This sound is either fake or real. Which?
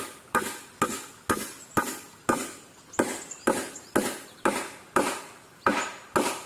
real